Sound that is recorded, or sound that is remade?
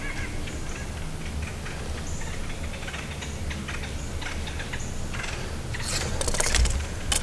recorded